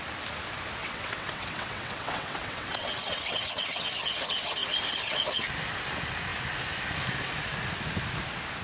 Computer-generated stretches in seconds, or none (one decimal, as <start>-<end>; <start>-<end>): 0.8-3.9